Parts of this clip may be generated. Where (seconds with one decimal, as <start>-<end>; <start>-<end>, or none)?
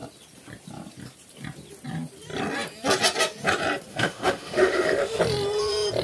3.9-5.2